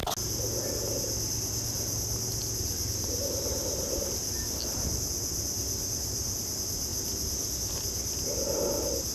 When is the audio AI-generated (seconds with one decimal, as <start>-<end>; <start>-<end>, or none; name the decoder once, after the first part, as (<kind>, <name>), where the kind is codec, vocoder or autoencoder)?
none